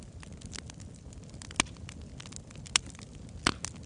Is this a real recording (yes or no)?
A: yes